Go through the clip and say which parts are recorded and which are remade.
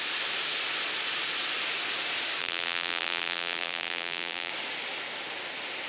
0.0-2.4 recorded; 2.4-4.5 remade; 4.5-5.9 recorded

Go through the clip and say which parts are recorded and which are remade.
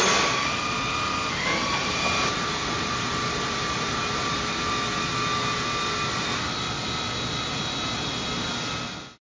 0.0-1.6 recorded; 1.6-4.6 remade; 4.6-9.3 recorded